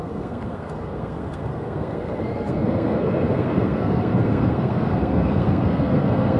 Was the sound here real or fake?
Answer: fake